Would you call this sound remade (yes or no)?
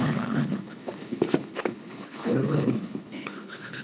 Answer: yes